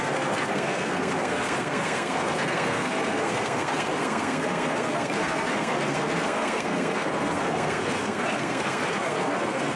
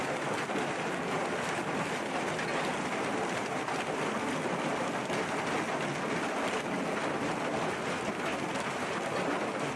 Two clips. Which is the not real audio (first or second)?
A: first